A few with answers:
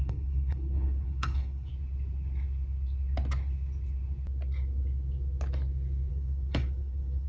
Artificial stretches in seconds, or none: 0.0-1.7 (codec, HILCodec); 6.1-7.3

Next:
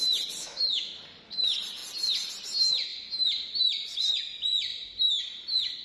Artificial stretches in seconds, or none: 0.4-1.0 (autoencoder, DAC-VAE)

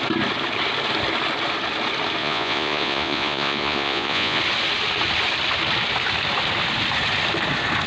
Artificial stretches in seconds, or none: 2.2-4.4 (vocoder, Vocos)

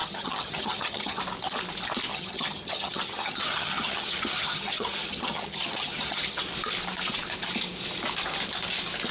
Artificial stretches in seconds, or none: 0.0-1.2 (vocoder, HiFi-GAN); 2.1-6.4